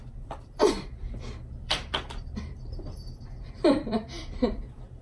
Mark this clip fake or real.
fake